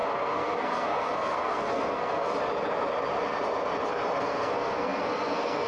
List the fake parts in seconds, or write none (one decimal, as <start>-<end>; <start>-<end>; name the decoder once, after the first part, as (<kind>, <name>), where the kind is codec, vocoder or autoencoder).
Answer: 0.0-2.3 (codec, SNAC); 4.2-5.7